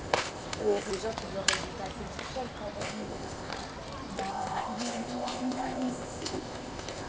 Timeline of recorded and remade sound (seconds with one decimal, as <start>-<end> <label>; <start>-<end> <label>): 0.0-0.9 remade; 0.9-2.8 recorded; 2.8-3.5 remade; 3.5-4.3 recorded; 4.3-7.1 remade